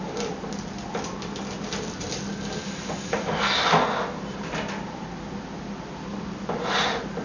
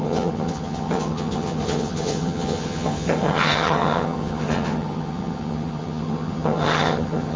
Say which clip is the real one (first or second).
first